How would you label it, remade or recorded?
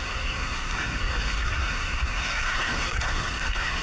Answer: remade